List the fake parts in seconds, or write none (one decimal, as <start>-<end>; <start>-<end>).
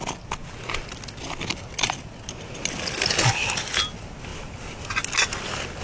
none